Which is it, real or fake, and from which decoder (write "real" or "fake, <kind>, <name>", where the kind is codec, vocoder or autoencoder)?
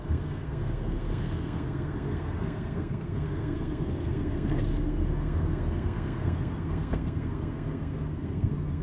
fake, codec, SNAC